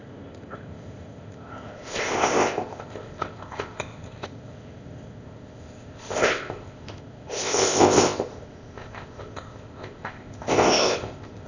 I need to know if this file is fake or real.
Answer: fake